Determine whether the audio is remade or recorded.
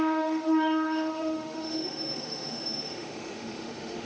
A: remade